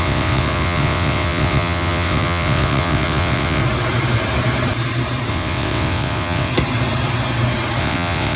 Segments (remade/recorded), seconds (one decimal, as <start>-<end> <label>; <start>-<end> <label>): 0.0-3.6 remade; 3.6-5.3 recorded; 5.3-6.5 remade; 6.5-7.8 recorded; 7.8-8.4 remade